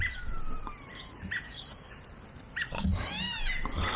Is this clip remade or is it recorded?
remade